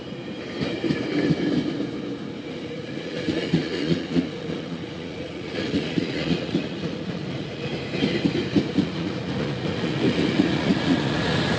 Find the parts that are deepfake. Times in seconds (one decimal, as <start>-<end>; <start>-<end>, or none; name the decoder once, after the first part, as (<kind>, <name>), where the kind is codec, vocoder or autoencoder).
2.5-7.7 (vocoder, Vocos); 8.7-11.6